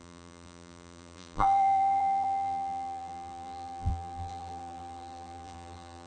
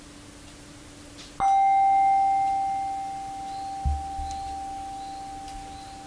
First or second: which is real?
second